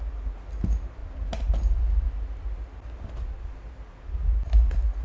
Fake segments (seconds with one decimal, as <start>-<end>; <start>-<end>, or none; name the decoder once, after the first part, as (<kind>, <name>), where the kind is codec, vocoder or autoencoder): none